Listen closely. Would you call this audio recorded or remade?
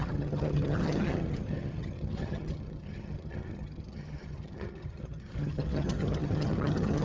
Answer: remade